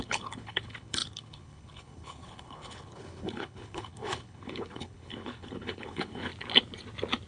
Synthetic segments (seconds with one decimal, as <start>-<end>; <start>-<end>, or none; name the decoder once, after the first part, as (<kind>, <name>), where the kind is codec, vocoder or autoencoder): 0.0-6.3 (codec, HILCodec)